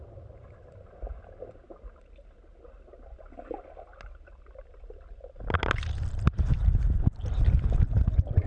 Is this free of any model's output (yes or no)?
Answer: yes